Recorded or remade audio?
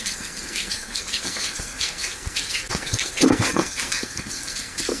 remade